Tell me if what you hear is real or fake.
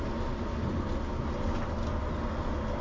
real